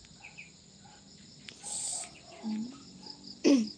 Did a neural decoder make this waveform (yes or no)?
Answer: no